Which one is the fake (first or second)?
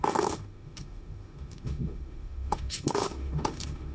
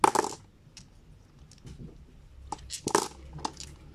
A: first